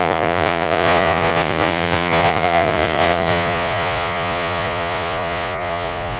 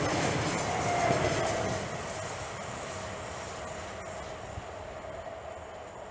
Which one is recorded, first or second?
second